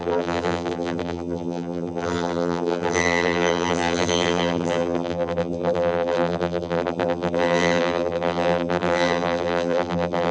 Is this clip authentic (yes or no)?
no